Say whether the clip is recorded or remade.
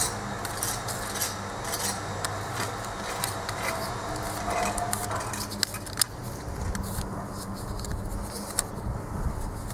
recorded